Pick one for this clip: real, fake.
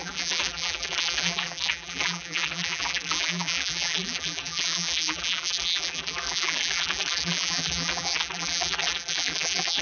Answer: fake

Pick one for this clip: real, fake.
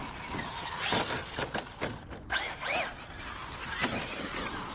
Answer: real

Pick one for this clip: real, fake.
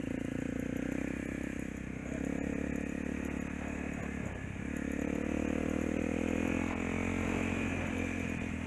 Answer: real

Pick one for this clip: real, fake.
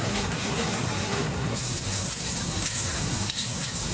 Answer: fake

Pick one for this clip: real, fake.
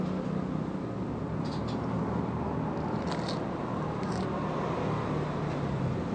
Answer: real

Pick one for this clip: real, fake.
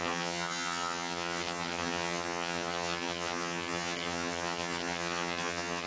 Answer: fake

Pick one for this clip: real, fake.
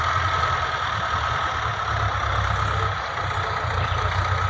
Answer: real